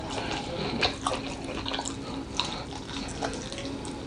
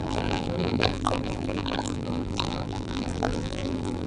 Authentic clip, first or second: first